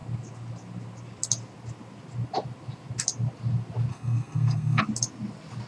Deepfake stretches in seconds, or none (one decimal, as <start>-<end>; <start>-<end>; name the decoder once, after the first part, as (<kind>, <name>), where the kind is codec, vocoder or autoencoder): 3.9-4.8 (codec, SNAC)